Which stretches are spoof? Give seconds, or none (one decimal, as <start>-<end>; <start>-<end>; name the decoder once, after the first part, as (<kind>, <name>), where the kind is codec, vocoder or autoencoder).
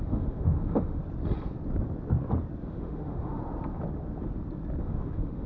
0.0-1.0 (autoencoder, DAC-VAE); 2.6-3.4; 4.8-5.5